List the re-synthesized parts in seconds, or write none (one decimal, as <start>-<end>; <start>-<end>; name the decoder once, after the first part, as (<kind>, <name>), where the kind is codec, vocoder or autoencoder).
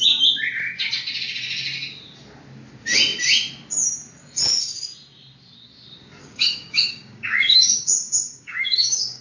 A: 6.2-9.2 (codec, DAC)